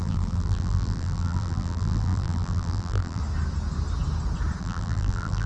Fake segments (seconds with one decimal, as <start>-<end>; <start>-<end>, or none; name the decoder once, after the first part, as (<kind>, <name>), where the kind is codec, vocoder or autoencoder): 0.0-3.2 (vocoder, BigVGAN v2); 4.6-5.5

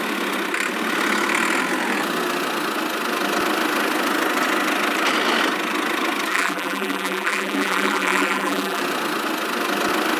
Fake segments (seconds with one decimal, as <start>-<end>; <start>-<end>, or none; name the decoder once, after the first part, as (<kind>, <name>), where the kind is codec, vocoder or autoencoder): 6.3-8.8 (vocoder, BigVGAN v2)

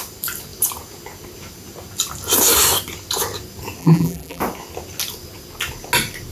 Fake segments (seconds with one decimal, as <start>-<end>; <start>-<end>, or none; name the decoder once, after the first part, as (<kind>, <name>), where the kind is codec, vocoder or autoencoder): 3.8-4.4 (vocoder, BigVGAN v2)

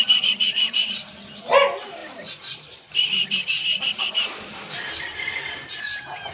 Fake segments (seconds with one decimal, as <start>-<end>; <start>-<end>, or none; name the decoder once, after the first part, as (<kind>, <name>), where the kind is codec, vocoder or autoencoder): 2.0-5.8 (vocoder, BigVGAN v2)

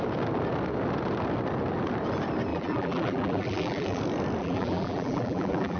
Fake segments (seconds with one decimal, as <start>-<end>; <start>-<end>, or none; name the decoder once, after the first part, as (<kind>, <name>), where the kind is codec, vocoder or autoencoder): 2.5-4.0 (vocoder, BigVGAN v2); 4.4-5.8